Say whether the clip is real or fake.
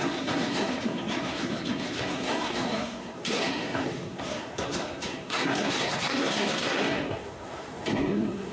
fake